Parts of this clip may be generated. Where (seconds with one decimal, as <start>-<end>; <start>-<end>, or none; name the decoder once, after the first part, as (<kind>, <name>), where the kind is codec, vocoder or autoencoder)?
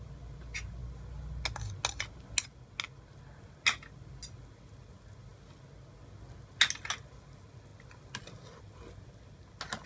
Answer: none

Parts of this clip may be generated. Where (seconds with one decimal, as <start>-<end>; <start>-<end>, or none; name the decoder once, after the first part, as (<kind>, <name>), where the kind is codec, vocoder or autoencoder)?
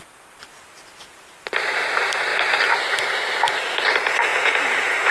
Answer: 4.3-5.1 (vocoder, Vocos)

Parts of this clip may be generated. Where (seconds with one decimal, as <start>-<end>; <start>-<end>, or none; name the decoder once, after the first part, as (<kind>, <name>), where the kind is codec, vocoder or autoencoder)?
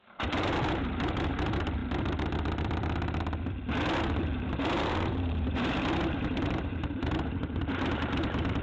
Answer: 0.0-1.8 (vocoder, BigVGAN v2); 4.0-8.6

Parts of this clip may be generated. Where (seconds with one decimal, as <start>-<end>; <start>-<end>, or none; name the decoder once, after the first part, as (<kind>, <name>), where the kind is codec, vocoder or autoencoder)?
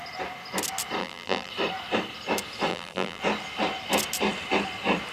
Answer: 1.0-1.5 (vocoder, BigVGAN v2); 2.7-3.2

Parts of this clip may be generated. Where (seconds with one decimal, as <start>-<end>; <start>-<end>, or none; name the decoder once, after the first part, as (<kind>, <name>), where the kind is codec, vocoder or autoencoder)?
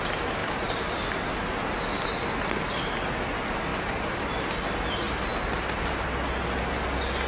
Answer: 0.4-0.9 (vocoder, BigVGAN v2); 3.7-4.2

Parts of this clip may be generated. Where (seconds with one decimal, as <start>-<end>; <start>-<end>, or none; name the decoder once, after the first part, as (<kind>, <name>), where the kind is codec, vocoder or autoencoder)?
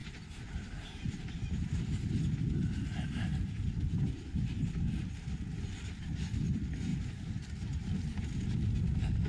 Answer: 0.0-2.1 (vocoder, BigVGAN v2); 6.9-8.3